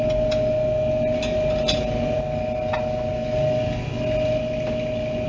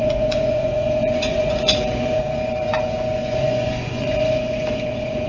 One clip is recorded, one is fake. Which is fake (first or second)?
second